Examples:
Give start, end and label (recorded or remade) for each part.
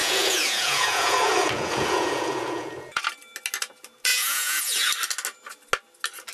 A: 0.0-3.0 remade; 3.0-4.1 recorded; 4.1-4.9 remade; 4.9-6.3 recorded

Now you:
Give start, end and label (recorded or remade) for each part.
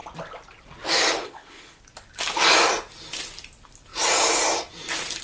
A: 0.0-1.2 recorded; 1.2-1.8 remade; 1.8-5.2 recorded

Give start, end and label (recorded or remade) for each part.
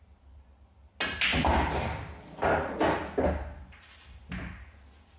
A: 0.0-5.2 recorded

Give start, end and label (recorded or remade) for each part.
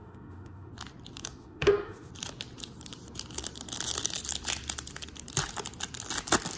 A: 0.0-0.7 remade; 0.7-1.2 recorded; 1.2-2.1 remade; 2.1-6.6 recorded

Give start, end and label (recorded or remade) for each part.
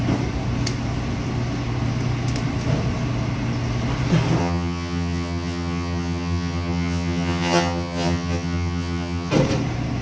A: 0.0-4.4 recorded; 4.4-9.3 remade; 9.3-10.0 recorded